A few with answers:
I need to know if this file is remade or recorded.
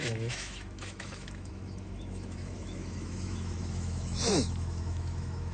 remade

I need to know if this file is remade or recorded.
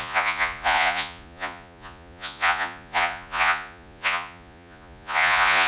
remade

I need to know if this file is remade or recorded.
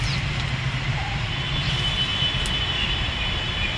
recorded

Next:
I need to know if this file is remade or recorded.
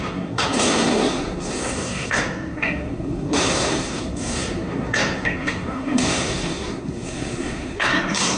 remade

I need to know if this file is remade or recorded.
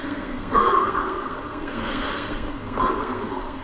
remade